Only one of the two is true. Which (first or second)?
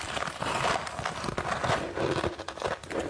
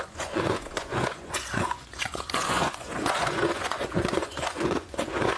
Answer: first